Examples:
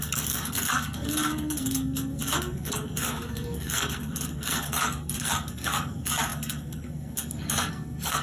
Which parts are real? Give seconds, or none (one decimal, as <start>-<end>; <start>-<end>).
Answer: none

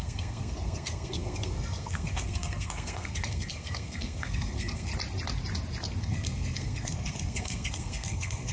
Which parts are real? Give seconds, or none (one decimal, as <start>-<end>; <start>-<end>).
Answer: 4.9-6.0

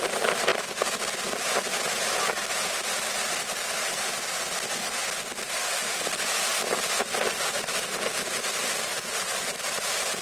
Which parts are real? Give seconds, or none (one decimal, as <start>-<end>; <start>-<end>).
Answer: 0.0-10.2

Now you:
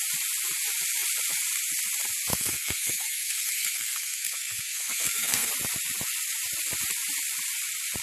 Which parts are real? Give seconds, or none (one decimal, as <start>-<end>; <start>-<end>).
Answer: 0.0-2.3; 5.5-8.0

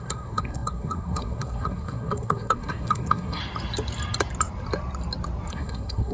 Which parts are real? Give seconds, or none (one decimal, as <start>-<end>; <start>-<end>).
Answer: 3.4-5.5

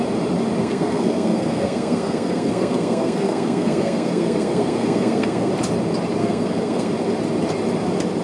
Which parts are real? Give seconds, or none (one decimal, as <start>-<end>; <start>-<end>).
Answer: 0.0-0.6; 5.5-6.2; 6.9-8.2

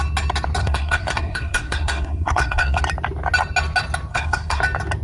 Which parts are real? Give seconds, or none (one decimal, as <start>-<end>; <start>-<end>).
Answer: 0.0-0.6; 2.8-4.1; 4.6-5.0

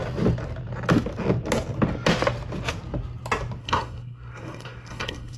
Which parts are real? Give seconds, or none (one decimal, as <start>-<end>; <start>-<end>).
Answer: 0.0-3.6